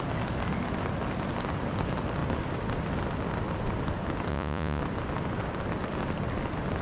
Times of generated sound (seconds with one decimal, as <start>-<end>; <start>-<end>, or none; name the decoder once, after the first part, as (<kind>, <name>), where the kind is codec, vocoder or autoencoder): 4.3-4.8 (vocoder, Vocos)